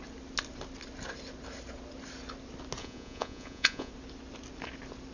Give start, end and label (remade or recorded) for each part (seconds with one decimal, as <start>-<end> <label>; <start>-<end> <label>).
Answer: 0.0-2.8 recorded; 2.8-3.9 remade; 3.9-5.1 recorded